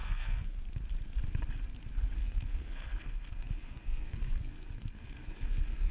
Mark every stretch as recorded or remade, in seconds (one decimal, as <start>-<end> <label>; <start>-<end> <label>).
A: 0.0-0.6 remade; 0.6-2.2 recorded; 2.2-5.9 remade